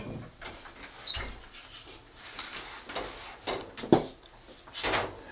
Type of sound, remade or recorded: recorded